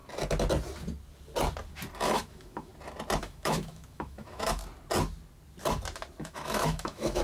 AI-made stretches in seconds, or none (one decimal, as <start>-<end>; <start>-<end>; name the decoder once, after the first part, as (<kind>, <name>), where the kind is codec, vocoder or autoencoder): 2.0-2.7 (autoencoder, DAC-VAE); 3.2-4.6; 6.2-7.2